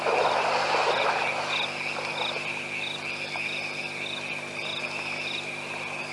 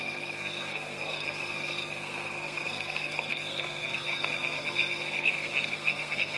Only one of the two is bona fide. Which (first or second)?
first